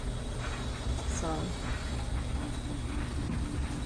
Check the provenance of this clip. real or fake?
real